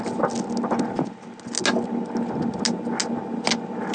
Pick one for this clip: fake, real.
real